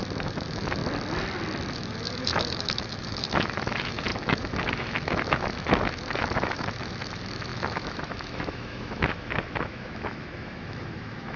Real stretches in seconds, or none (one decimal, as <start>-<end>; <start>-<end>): 0.8-1.7